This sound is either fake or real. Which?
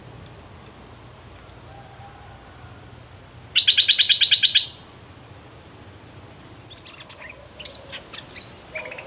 real